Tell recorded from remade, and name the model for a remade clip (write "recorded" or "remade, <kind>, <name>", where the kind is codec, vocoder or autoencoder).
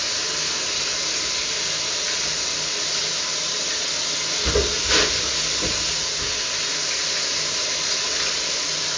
recorded